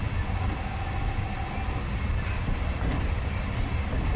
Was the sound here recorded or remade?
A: recorded